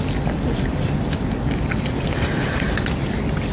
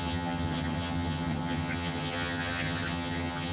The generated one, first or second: second